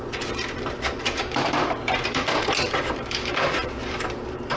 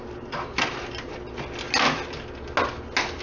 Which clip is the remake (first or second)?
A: first